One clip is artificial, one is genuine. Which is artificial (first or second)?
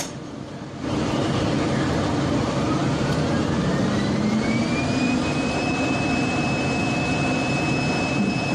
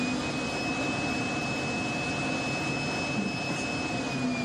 first